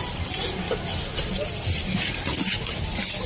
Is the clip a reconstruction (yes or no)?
no